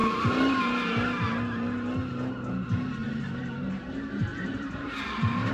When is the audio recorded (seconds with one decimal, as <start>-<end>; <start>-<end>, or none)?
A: 0.6-3.0; 3.9-4.3